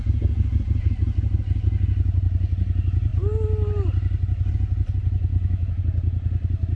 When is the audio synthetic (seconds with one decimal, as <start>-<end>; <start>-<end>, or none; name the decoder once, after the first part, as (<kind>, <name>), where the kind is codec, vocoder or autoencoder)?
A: 5.3-5.8 (autoencoder, DAC-VAE)